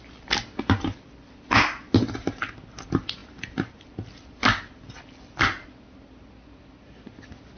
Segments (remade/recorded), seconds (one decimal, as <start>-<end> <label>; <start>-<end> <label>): 0.0-7.6 recorded

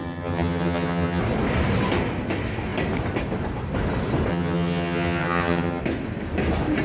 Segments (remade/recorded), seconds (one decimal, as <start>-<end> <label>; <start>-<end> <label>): 0.0-1.2 remade; 1.2-4.3 recorded; 4.3-5.8 remade; 5.8-6.8 recorded

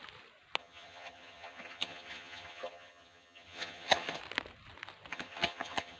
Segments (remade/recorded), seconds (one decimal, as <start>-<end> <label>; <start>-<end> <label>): 0.0-0.6 recorded; 0.6-4.2 remade; 4.2-5.1 recorded; 5.1-6.0 remade

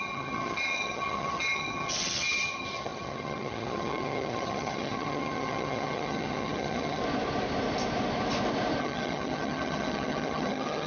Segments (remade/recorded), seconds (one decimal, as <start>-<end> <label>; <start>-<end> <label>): 0.0-7.0 remade; 7.0-8.8 recorded; 8.8-10.9 remade

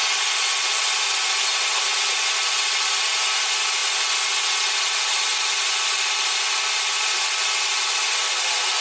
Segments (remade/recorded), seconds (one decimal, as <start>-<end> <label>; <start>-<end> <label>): 0.0-8.8 recorded